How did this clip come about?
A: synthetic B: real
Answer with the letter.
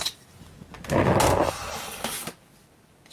B